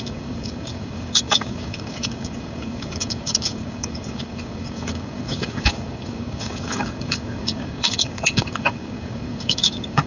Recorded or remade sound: remade